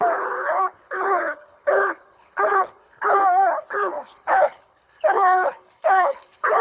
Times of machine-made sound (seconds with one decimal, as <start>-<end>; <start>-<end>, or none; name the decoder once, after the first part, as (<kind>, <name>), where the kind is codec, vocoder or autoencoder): 0.0-3.2 (codec, HILCodec); 3.7-6.6